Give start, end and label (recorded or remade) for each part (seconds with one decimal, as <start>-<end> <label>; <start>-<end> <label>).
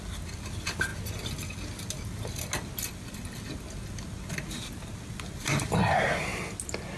0.0-7.0 recorded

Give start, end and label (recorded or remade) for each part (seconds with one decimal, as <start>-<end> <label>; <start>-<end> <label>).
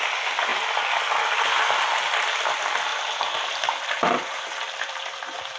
0.0-2.9 recorded; 2.9-5.6 remade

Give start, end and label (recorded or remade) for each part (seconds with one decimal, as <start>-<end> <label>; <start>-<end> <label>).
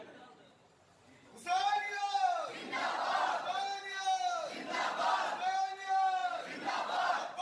0.0-7.4 recorded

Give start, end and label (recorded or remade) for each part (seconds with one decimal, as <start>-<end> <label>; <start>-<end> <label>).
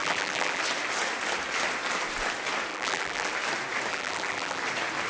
0.0-0.6 remade; 0.6-2.7 recorded; 2.7-3.3 remade; 3.3-3.9 recorded; 3.9-4.6 remade; 4.6-5.1 recorded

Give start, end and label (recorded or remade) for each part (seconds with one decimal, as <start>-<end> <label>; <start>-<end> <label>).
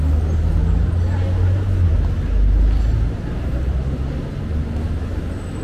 0.0-5.6 recorded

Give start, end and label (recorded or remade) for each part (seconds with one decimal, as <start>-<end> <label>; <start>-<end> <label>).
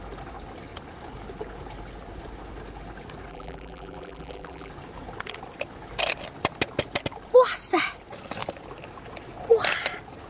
0.0-3.3 recorded; 3.3-4.7 remade; 4.7-10.3 recorded